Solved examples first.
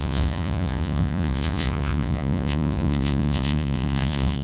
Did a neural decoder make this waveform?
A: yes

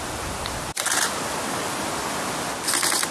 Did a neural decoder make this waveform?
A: no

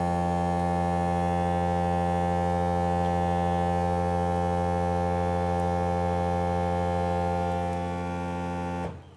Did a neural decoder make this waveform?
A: no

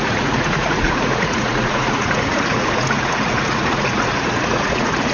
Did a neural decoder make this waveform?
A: yes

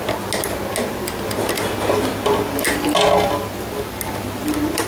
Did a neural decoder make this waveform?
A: no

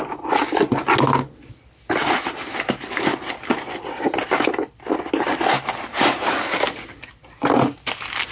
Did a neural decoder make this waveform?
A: no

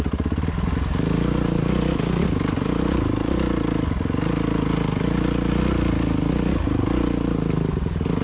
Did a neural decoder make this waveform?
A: no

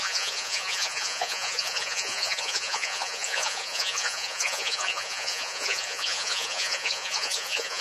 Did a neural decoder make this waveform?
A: yes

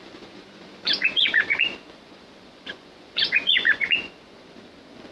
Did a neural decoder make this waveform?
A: yes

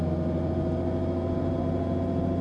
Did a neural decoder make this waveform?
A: no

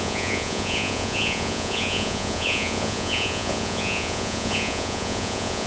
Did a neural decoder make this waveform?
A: yes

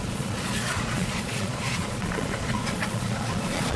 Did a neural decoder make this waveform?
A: yes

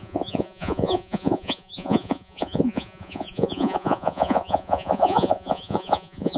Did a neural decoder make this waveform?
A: yes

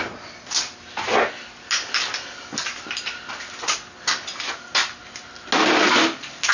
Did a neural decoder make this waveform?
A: no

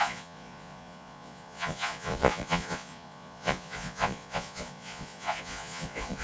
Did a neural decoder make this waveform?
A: yes